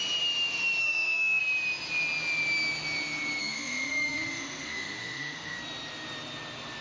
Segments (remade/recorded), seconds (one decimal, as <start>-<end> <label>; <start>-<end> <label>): 0.0-0.8 recorded; 0.8-1.4 remade; 1.4-3.4 recorded; 3.4-5.6 remade; 5.6-6.8 recorded